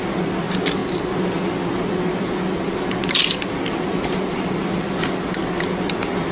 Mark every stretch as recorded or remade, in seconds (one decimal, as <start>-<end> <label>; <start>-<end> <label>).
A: 0.0-6.3 recorded